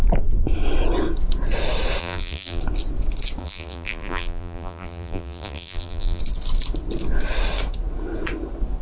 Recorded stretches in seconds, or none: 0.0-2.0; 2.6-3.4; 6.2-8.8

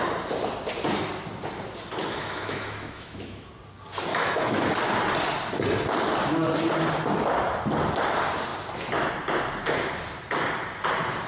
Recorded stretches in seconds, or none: 0.0-2.0; 3.5-4.1; 4.6-11.3

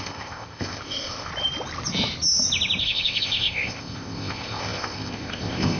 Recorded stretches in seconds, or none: 1.3-2.8

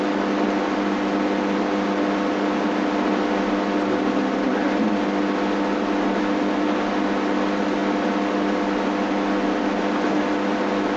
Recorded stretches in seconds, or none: 0.0-11.0